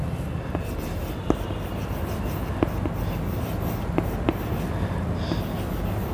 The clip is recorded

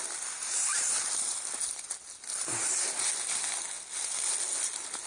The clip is recorded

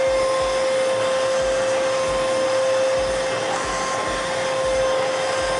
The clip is recorded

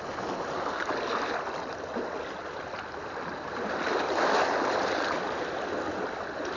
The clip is recorded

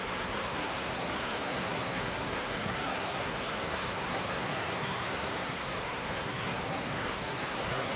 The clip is remade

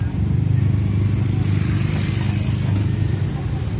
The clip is recorded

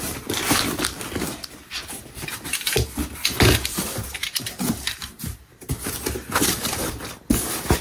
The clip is recorded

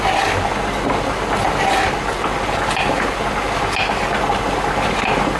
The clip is recorded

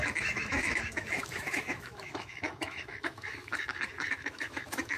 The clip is remade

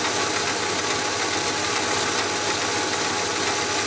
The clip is recorded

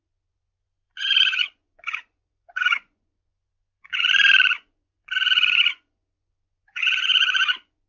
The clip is remade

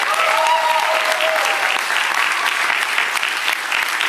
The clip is recorded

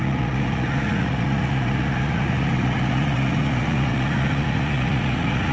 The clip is remade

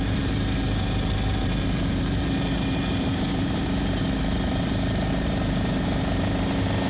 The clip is remade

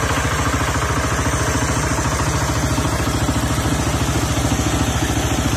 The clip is recorded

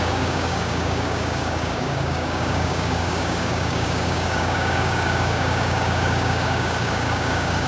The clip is remade